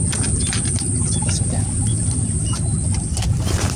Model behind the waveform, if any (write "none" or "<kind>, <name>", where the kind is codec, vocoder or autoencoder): vocoder, BigVGAN v2